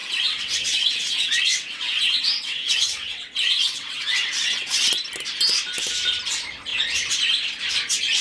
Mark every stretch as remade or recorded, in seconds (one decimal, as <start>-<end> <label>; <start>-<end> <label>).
0.0-4.9 remade; 4.9-8.2 recorded